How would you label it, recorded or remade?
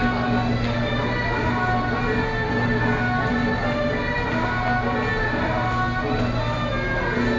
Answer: recorded